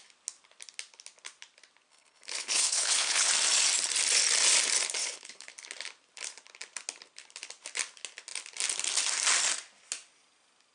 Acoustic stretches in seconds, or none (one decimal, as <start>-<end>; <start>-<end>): 0.0-1.9; 3.3-5.0; 5.5-10.7